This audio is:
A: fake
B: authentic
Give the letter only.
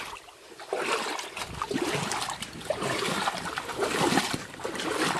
B